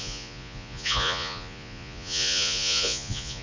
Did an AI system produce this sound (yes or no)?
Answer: yes